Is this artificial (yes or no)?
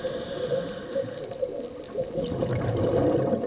no